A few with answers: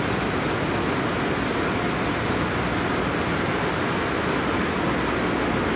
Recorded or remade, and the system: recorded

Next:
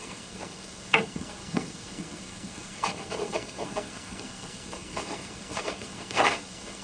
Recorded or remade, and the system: remade, codec, SNAC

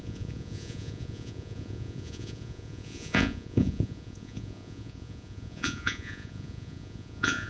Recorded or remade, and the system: remade, vocoder, Vocos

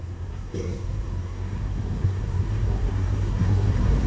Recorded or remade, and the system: remade, codec, SNAC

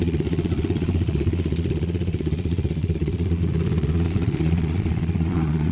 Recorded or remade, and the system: remade, vocoder, Vocos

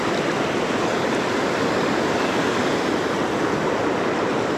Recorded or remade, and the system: recorded